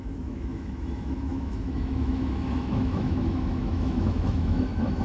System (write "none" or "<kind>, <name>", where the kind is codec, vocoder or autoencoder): autoencoder, DAC-VAE